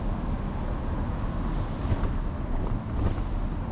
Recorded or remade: recorded